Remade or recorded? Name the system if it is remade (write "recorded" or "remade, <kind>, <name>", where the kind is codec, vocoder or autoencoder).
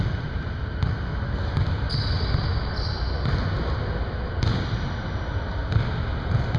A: recorded